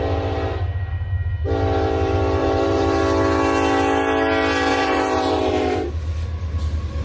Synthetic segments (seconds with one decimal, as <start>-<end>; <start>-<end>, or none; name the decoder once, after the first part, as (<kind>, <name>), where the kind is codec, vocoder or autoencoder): 2.4-3.0 (vocoder, BigVGAN v2); 4.7-5.9